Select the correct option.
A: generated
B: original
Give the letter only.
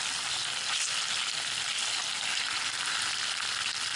B